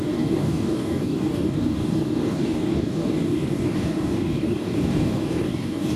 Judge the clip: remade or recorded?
remade